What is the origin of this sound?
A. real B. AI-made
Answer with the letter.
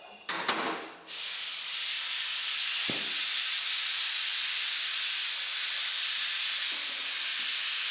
A